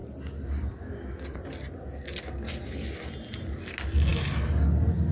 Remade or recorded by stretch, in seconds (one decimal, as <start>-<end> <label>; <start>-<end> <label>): 0.0-5.1 recorded